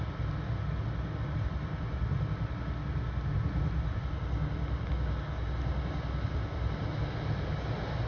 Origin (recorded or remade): recorded